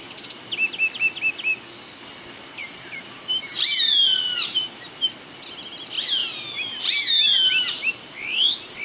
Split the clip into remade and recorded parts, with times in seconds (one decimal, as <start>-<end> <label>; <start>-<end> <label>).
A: 0.0-2.6 recorded; 2.6-3.9 remade; 3.9-6.2 recorded; 6.2-8.8 remade